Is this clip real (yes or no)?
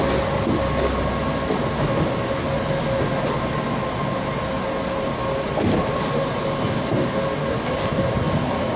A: yes